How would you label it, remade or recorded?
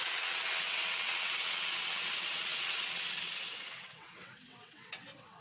remade